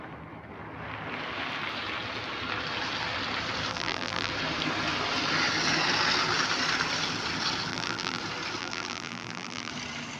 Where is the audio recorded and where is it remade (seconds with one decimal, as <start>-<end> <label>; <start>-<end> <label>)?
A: 0.0-3.7 recorded; 3.7-4.3 remade; 4.3-7.7 recorded; 7.7-8.2 remade; 8.2-8.6 recorded; 8.6-9.7 remade; 9.7-10.2 recorded